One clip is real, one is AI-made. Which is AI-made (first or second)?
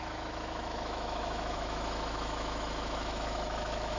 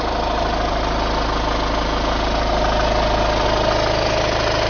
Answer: first